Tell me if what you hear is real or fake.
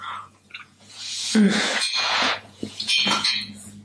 fake